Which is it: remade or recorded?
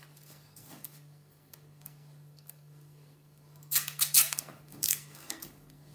remade